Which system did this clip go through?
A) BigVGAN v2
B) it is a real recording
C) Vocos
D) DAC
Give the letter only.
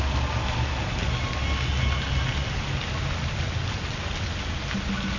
B